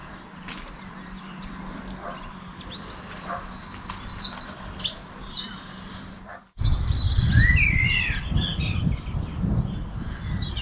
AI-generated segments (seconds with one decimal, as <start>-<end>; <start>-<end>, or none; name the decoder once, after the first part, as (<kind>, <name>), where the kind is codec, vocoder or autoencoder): 0.0-10.6 (vocoder, BigVGAN v2)